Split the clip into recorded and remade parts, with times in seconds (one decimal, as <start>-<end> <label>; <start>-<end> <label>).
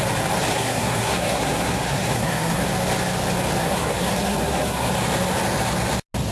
0.0-0.5 recorded; 0.5-2.7 remade; 2.7-3.6 recorded; 3.6-4.9 remade; 4.9-6.3 recorded